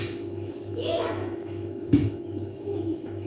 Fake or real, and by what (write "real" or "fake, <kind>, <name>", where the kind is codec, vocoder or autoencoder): fake, autoencoder, DAC-VAE